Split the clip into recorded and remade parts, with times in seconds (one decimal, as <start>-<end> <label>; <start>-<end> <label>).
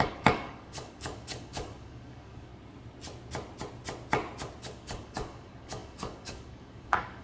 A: 0.0-2.5 remade; 2.5-4.6 recorded; 4.6-7.2 remade